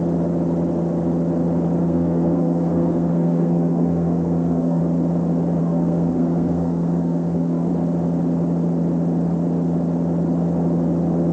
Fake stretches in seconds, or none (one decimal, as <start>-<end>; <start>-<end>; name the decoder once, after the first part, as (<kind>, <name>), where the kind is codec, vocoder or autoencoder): 1.8-4.8 (codec, SNAC); 5.6-7.7